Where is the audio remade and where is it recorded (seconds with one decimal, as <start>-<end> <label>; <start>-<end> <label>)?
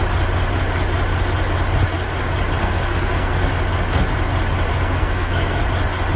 0.0-2.6 recorded; 2.6-3.5 remade; 3.5-4.7 recorded; 4.7-5.6 remade; 5.6-6.2 recorded